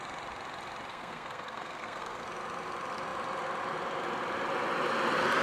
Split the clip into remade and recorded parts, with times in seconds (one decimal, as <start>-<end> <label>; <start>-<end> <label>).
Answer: 0.0-0.9 recorded; 0.9-2.2 remade; 2.2-5.4 recorded